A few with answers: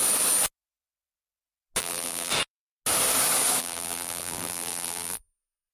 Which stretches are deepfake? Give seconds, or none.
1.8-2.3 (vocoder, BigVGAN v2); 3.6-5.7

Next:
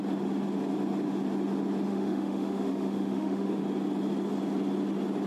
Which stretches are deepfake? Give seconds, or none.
1.9-3.6 (autoencoder, DAC-VAE)

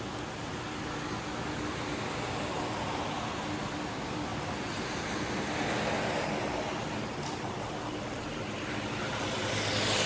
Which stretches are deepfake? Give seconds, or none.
none

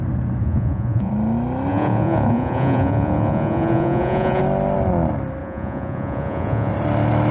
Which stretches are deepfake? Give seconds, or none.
0.4-1.1 (vocoder, Vocos); 1.7-4.4; 5.4-6.7

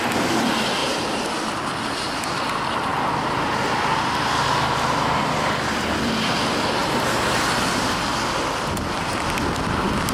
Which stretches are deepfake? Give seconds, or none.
0.8-1.4 (vocoder, BigVGAN v2); 6.8-8.1

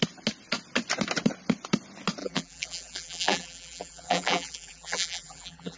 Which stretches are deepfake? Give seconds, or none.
2.2-5.8 (vocoder, BigVGAN v2)